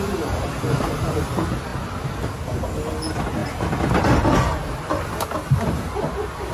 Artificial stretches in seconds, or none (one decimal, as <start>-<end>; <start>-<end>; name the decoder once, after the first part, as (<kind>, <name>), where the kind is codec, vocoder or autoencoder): none